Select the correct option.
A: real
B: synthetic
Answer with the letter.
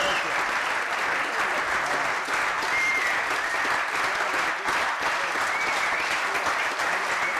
A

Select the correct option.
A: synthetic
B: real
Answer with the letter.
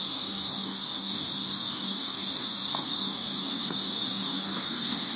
A